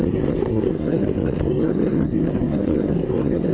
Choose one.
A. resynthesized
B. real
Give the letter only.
A